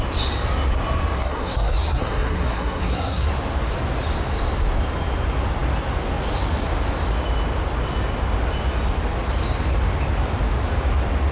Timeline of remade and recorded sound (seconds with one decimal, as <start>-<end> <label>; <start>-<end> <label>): 0.0-1.2 recorded; 1.2-3.3 remade; 3.3-11.3 recorded